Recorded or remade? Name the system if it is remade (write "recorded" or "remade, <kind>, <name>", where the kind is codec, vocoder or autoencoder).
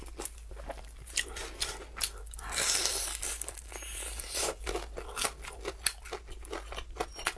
recorded